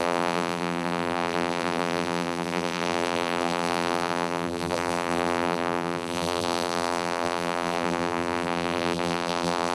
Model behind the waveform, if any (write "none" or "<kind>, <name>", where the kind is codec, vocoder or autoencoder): vocoder, BigVGAN v2